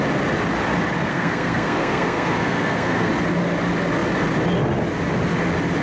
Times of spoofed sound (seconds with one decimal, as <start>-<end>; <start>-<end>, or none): 1.1-3.1

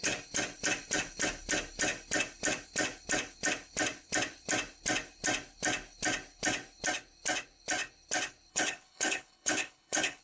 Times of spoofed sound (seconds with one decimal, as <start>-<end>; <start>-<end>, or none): 8.5-10.2

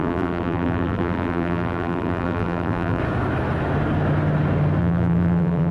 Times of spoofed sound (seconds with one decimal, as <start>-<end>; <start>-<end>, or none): 0.0-3.0; 4.8-5.7

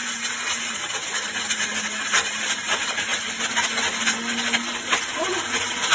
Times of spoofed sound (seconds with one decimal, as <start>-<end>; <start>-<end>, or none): none

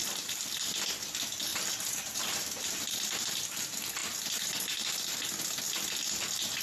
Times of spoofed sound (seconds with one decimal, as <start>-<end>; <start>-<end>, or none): 1.5-2.8

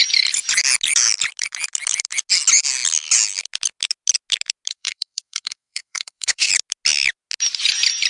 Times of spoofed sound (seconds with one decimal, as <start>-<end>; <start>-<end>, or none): 4.7-6.5

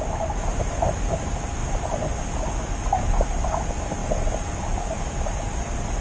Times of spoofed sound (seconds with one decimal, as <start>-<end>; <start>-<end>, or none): none